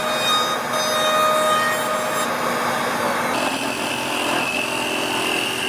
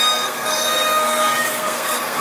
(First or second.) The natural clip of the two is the first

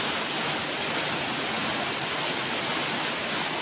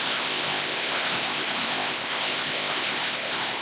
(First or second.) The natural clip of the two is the first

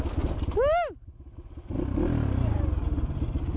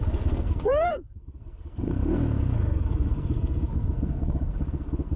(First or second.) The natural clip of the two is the first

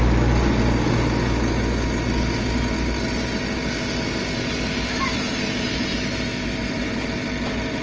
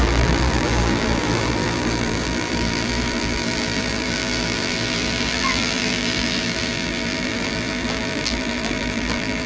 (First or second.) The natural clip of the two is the first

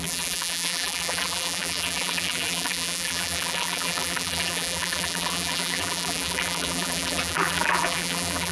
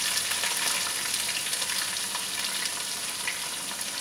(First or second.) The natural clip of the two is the second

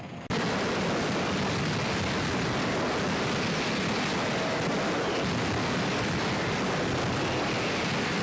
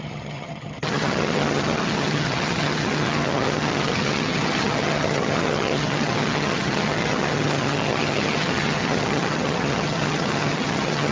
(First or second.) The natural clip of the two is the first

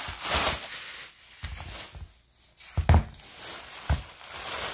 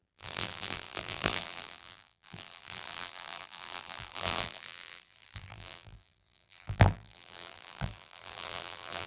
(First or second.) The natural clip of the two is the first